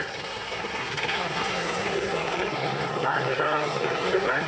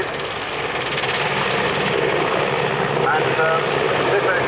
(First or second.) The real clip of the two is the second